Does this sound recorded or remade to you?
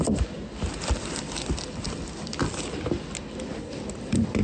recorded